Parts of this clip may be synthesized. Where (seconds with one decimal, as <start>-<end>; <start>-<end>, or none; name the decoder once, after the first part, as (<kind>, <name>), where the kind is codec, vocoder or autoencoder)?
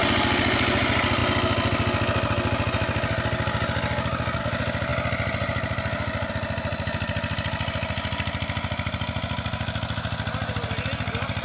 none